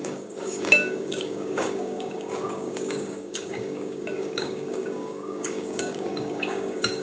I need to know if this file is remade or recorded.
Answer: remade